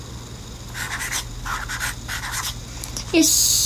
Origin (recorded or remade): recorded